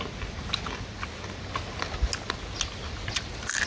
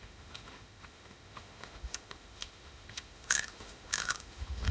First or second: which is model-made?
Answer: second